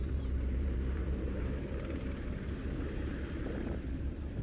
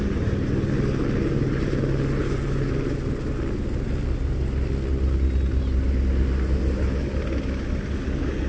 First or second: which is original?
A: second